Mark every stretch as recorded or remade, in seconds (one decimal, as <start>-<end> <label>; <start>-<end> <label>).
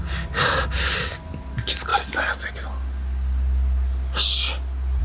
0.0-5.0 recorded